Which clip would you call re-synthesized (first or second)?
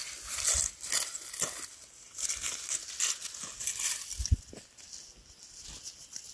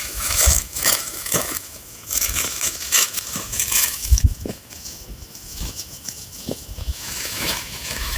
second